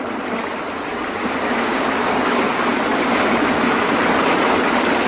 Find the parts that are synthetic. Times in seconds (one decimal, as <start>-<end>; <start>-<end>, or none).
0.9-4.0